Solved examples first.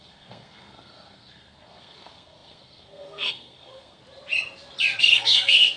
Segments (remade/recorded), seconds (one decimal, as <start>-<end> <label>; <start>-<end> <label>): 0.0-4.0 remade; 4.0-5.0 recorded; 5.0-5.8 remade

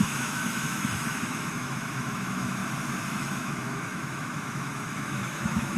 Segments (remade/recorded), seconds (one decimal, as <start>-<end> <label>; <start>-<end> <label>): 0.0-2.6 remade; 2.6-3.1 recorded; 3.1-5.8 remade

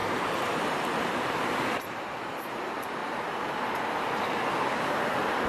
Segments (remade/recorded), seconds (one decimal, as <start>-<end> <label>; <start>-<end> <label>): 0.0-3.0 remade; 3.0-4.6 recorded; 4.6-5.5 remade

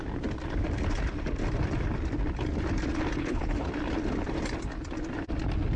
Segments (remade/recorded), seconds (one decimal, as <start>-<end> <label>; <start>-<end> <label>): 0.0-3.2 recorded; 3.2-3.7 remade; 3.7-5.8 recorded